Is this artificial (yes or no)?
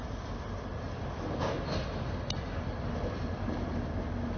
no